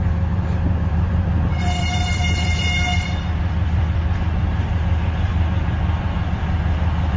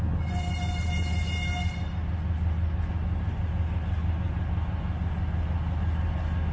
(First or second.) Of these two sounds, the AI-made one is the first